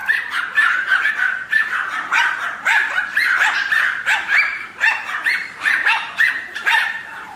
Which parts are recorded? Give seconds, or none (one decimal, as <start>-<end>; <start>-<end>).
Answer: 1.1-4.5